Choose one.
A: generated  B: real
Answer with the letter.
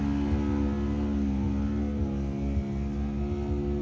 B